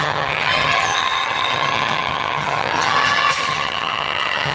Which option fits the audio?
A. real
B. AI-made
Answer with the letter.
B